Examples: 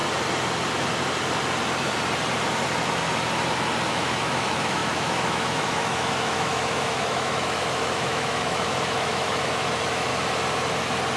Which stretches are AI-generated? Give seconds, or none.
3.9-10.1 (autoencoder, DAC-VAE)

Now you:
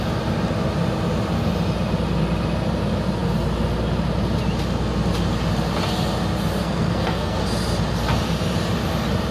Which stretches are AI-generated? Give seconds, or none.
6.6-7.4 (codec, SNAC)

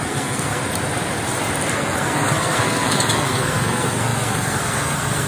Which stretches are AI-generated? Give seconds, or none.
0.0-0.6 (codec, SNAC); 1.7-5.3

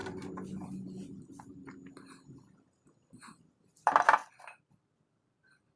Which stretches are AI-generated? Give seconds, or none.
none

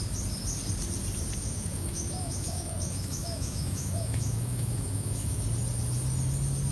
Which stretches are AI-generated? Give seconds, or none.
1.4-5.4 (autoencoder, DAC-VAE)

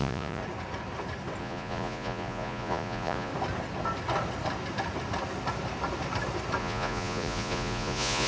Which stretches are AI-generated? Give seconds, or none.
0.0-0.4 (vocoder, Vocos); 1.4-3.3; 6.6-8.3